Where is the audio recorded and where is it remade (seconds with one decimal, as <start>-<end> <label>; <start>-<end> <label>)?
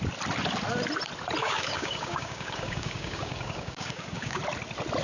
0.0-1.4 recorded; 1.4-4.4 remade; 4.4-5.0 recorded